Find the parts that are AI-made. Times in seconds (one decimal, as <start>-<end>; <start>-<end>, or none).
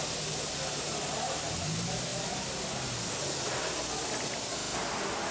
none